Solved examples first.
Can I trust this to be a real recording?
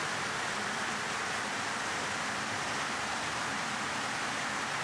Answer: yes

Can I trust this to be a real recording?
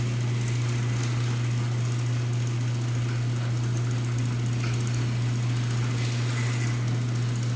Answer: yes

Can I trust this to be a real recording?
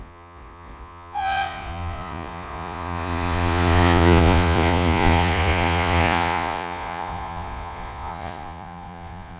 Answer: no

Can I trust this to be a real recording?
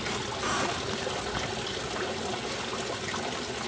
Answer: yes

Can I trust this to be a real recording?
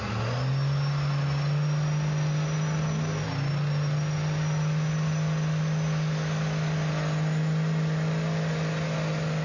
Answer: yes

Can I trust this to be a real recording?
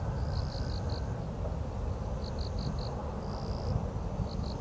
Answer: yes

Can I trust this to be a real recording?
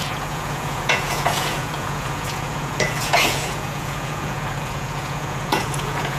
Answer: no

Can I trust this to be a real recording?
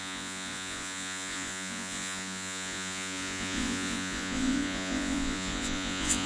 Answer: no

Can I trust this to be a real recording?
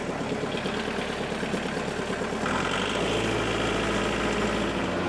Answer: yes